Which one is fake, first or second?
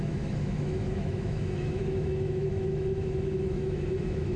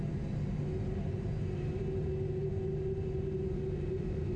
first